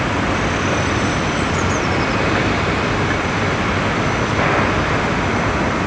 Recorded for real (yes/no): no